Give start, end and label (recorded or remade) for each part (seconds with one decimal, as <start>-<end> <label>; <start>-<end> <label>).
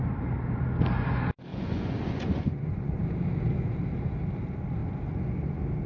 0.0-1.5 recorded; 1.5-3.0 remade; 3.0-5.9 recorded